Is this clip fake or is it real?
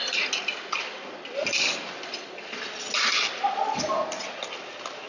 real